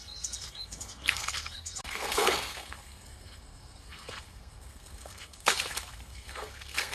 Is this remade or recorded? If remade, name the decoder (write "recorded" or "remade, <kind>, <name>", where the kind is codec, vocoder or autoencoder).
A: remade, codec, SNAC